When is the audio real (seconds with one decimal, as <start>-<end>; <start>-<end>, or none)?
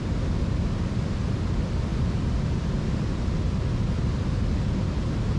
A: 0.0-5.4